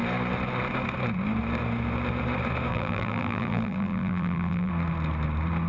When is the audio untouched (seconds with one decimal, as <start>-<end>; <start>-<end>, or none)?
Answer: 0.0-2.7; 4.7-5.7